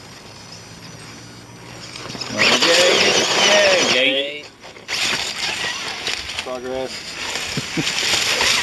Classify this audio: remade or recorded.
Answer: recorded